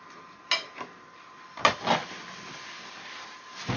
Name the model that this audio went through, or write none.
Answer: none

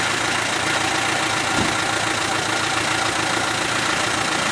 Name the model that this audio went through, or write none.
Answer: none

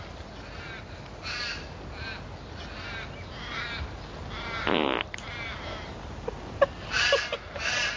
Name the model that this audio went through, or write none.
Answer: none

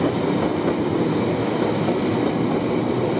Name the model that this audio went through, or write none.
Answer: none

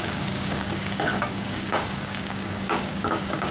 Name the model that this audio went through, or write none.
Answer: codec, DAC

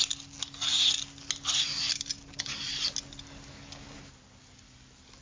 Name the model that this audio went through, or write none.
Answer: none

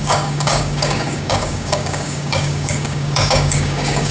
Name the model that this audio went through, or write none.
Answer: codec, DAC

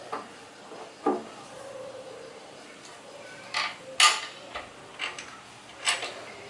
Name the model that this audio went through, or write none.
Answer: none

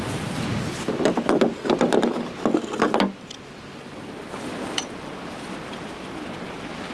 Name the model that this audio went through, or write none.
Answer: none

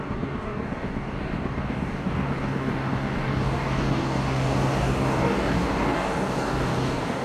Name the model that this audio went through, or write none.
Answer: codec, DAC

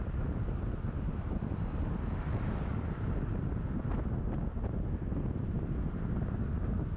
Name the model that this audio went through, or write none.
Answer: none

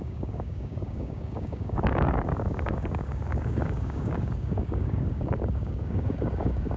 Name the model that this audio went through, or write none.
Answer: codec, DAC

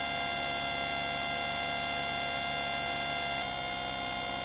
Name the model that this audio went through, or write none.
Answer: none